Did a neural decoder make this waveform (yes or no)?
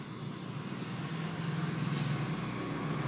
no